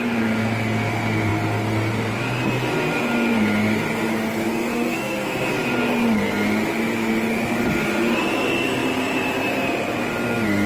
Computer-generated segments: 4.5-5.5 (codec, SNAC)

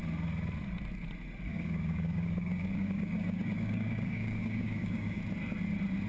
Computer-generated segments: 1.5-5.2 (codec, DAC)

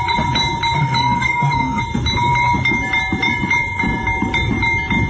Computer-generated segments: 0.8-1.8 (codec, SNAC)

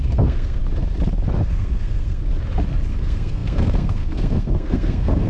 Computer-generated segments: 0.0-0.6 (codec, SNAC); 1.5-2.2; 2.9-5.3